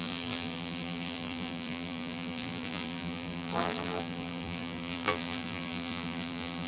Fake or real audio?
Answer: fake